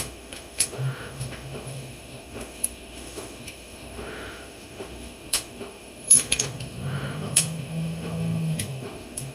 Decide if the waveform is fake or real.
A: fake